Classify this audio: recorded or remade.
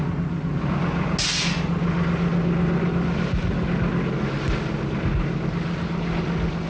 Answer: recorded